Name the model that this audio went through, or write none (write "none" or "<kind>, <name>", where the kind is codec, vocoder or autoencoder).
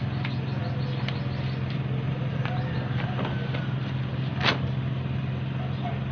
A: none